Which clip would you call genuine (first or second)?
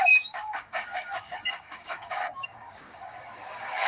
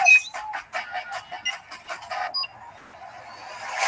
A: second